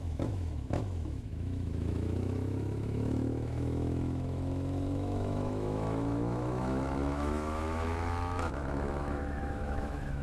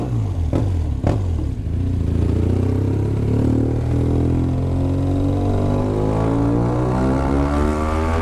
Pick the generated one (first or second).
first